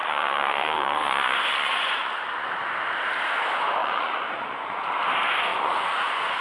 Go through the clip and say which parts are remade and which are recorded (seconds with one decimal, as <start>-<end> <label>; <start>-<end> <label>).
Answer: 0.0-2.5 remade; 2.5-3.8 recorded; 3.8-4.9 remade; 4.9-5.5 recorded; 5.5-6.4 remade